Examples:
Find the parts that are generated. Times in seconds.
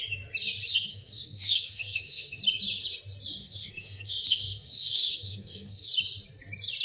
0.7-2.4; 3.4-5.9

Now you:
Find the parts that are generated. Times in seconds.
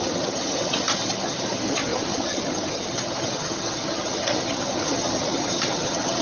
0.0-6.2